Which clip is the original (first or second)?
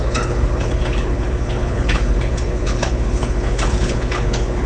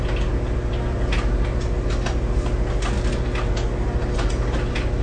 second